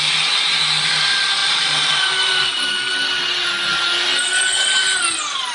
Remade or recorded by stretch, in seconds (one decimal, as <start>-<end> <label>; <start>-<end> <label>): 0.0-1.4 recorded; 1.4-2.9 remade; 2.9-5.5 recorded